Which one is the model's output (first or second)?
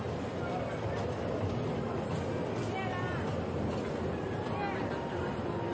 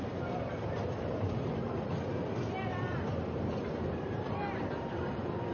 second